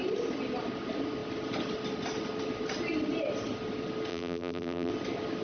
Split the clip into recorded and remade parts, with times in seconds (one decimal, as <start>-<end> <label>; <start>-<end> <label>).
0.0-4.1 recorded; 4.1-4.9 remade; 4.9-5.4 recorded

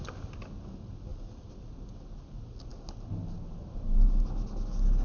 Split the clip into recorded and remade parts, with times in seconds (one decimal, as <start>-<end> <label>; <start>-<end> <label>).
0.0-1.1 recorded; 1.1-1.7 remade; 1.7-5.0 recorded

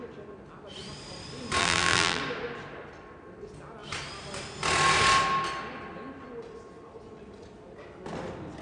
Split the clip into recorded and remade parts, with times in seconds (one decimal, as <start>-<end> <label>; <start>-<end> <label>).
0.0-1.6 recorded; 1.6-2.2 remade; 2.2-8.6 recorded

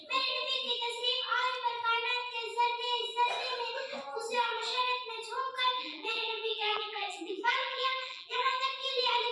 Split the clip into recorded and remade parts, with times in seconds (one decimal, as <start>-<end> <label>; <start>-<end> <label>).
0.0-5.8 recorded; 5.8-8.6 remade; 8.6-9.3 recorded

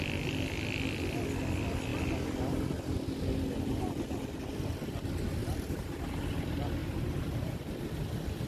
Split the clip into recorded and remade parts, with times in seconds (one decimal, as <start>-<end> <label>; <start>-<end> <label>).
0.0-5.4 recorded; 5.4-5.9 remade; 5.9-6.8 recorded; 6.8-7.8 remade; 7.8-8.5 recorded

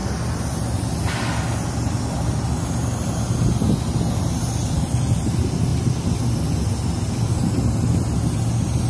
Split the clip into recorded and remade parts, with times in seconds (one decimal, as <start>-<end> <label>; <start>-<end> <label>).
0.0-1.0 remade; 1.0-8.9 recorded